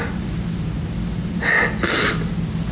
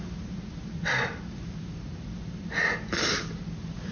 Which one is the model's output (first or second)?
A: second